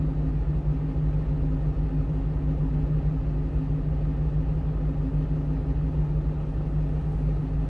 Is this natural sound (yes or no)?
yes